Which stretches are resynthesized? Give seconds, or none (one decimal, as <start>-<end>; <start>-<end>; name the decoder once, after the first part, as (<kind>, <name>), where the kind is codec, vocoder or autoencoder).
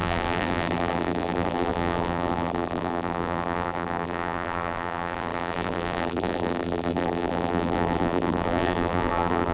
0.0-9.5 (vocoder, BigVGAN v2)